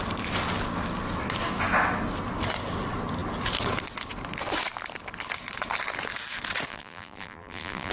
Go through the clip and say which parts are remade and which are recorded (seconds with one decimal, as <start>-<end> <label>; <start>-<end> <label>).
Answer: 0.0-6.7 recorded; 6.7-7.9 remade